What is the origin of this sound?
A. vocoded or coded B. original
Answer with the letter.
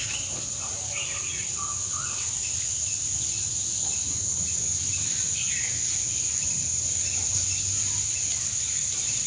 B